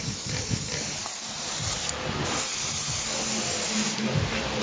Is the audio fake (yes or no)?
no